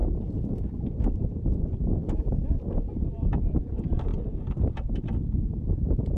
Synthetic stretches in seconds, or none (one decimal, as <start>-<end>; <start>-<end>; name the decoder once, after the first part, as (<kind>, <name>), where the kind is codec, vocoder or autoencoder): 0.0-0.8 (vocoder, BigVGAN v2); 2.0-2.9